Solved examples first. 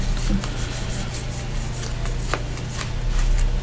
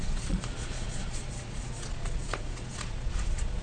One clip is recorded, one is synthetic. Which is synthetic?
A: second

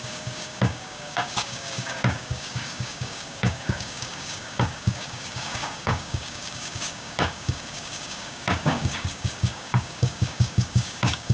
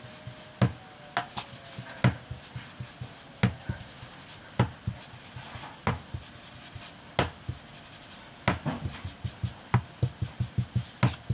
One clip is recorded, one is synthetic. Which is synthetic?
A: first